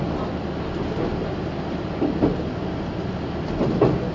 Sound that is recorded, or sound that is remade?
recorded